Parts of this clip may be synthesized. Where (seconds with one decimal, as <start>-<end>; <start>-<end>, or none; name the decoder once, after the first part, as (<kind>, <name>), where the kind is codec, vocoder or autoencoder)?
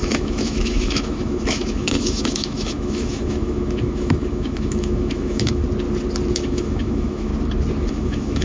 0.0-5.6 (autoencoder, DAC-VAE); 6.3-7.3; 7.9-8.4